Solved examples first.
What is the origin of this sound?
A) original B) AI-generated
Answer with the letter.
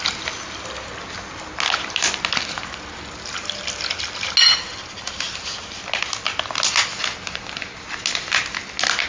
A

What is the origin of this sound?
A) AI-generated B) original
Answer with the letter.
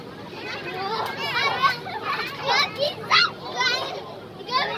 B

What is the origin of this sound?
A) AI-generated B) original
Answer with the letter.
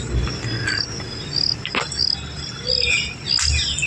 B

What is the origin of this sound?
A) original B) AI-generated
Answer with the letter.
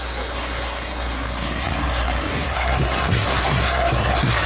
B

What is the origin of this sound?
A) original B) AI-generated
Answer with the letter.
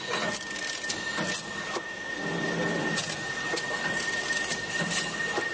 A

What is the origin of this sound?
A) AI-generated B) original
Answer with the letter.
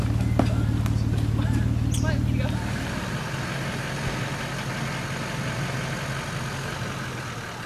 B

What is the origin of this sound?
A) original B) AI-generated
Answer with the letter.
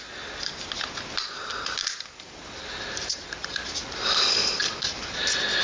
A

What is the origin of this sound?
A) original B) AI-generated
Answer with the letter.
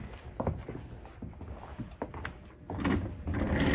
A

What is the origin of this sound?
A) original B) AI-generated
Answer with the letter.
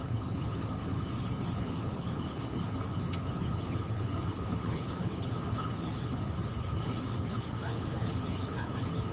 B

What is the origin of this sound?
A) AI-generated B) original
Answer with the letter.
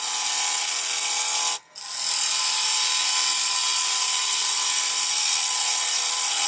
B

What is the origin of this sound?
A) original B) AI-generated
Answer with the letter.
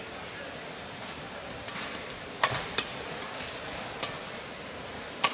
A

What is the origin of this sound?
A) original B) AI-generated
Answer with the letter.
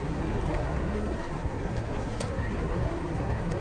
B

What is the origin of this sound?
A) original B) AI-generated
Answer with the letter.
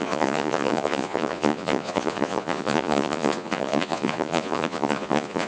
B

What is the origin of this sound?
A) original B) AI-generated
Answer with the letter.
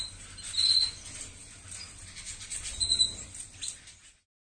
A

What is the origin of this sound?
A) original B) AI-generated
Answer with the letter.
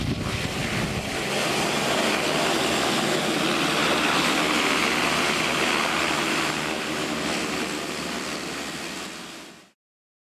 A